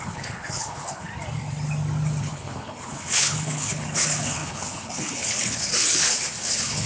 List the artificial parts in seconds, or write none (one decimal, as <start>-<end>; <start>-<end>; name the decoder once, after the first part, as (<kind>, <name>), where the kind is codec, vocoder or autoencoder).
0.0-1.1 (codec, HILCodec); 2.2-6.9